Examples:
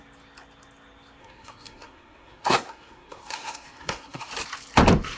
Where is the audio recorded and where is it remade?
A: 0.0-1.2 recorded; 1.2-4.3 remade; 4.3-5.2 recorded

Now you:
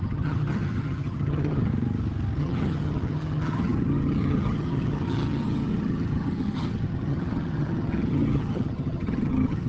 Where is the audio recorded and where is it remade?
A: 0.0-1.7 remade; 1.7-2.4 recorded; 2.4-9.7 remade

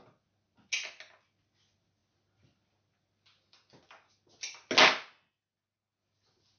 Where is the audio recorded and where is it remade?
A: 0.0-6.6 recorded

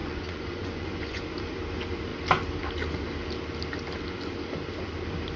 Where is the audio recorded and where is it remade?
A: 0.0-1.2 remade; 1.2-5.4 recorded

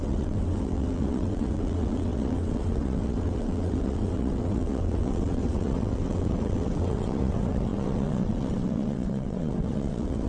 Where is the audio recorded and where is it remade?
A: 0.0-10.3 remade